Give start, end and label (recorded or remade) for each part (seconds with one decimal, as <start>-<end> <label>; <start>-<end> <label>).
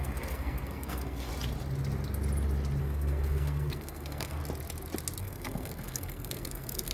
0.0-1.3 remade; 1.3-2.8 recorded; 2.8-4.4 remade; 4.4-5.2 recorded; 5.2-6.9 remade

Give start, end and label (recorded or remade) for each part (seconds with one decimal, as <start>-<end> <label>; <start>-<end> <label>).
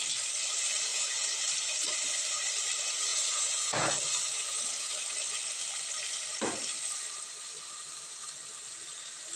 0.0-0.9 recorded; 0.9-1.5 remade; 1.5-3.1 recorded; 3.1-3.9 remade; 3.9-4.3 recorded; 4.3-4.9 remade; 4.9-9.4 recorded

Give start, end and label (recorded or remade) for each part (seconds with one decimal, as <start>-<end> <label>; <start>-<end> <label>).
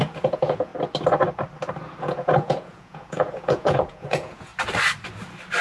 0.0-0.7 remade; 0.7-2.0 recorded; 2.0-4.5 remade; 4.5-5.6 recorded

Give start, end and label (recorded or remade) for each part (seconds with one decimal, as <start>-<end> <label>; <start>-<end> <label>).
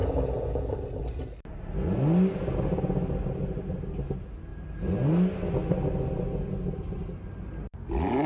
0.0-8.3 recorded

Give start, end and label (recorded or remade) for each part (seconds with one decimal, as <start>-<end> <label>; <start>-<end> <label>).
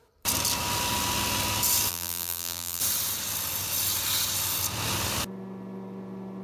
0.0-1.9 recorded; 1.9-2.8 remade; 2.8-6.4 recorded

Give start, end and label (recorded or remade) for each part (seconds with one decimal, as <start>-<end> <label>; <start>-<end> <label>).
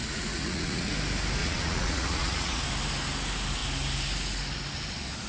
0.0-0.9 remade; 0.9-1.4 recorded; 1.4-2.6 remade; 2.6-5.3 recorded